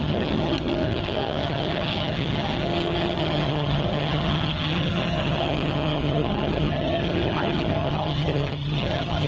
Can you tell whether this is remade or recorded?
remade